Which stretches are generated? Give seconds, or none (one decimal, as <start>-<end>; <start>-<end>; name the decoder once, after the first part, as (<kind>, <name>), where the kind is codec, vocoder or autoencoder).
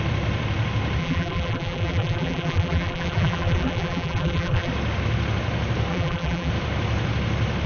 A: 1.0-4.7 (vocoder, BigVGAN v2); 5.9-6.5